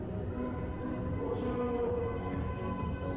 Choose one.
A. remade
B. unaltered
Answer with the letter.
B